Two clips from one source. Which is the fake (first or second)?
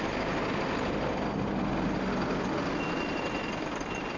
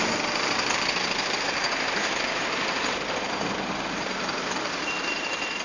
second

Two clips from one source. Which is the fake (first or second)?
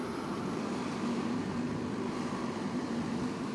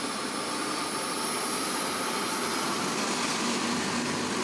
first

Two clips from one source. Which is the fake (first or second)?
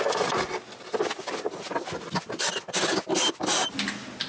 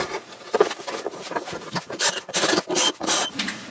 second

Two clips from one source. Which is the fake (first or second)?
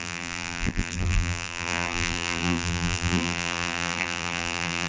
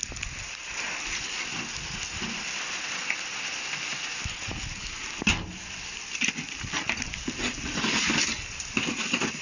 first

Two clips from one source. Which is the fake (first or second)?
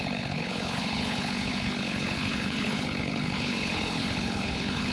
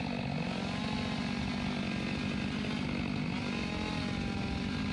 first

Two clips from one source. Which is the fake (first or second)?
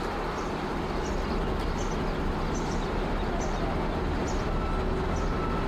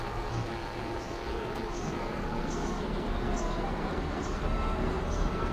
second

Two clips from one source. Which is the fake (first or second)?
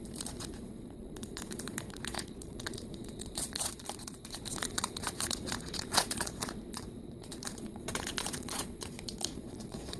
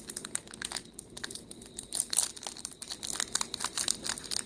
first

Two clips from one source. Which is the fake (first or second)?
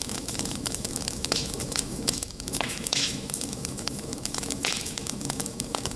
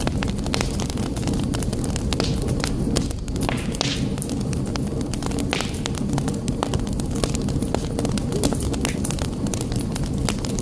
first